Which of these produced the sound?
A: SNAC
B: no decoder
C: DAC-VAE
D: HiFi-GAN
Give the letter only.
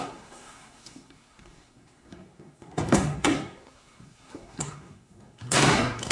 A